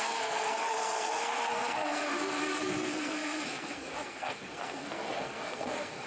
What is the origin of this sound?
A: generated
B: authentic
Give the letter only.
A